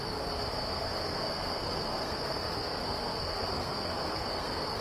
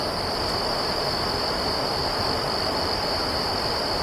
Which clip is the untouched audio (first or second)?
second